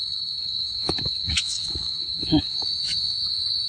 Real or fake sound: fake